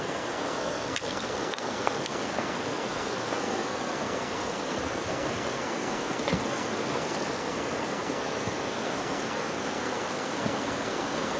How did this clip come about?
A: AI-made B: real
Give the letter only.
A